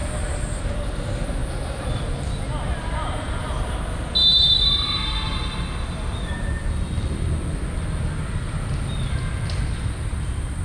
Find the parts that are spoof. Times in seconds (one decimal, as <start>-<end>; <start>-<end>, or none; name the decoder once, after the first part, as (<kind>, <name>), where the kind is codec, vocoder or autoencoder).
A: none